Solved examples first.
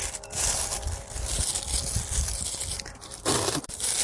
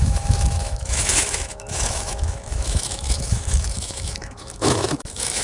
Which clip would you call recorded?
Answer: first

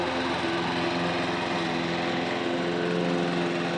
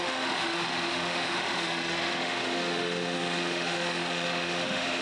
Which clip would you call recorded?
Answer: first